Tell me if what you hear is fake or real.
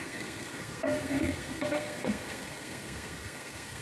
fake